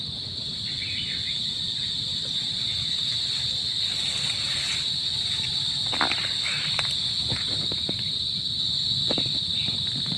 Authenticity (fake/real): real